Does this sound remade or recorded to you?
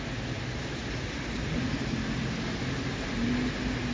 recorded